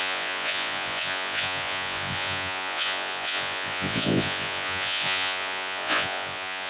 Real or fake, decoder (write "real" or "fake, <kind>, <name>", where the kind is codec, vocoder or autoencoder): fake, vocoder, Vocos